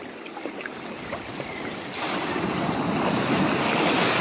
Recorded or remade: recorded